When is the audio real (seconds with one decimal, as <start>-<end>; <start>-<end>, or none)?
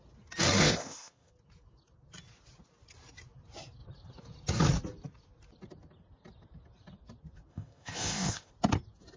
0.0-0.6; 1.3-7.5; 8.5-9.2